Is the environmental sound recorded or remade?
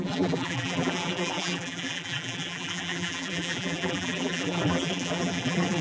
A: remade